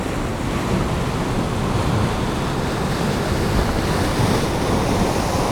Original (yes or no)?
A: yes